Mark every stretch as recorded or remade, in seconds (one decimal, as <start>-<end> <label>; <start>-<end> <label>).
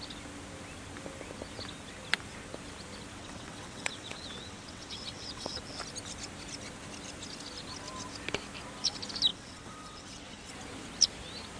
0.0-3.2 recorded; 3.2-5.6 remade; 5.6-9.3 recorded; 9.3-10.5 remade; 10.5-11.6 recorded